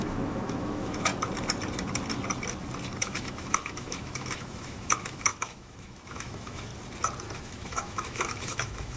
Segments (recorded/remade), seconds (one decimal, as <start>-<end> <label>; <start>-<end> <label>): 0.0-1.1 remade; 1.1-3.0 recorded; 3.0-6.7 remade; 6.7-7.4 recorded; 7.4-9.0 remade